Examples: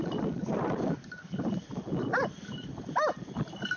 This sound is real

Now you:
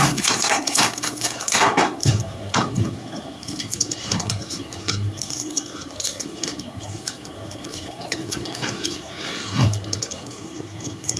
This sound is fake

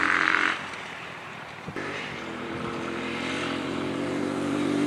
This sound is fake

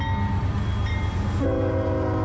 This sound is real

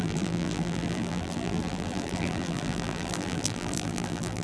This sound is fake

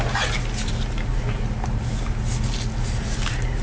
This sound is real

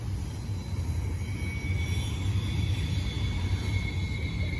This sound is real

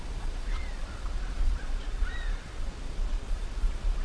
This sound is fake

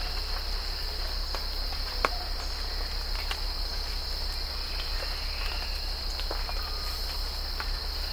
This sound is real